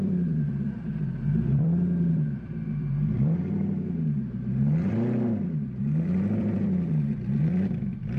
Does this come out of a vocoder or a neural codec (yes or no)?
yes